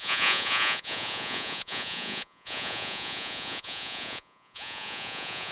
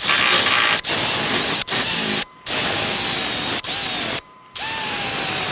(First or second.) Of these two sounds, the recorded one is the second